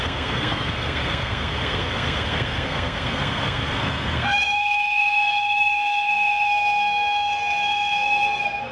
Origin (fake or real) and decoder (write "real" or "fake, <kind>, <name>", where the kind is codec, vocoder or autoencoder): fake, codec, SNAC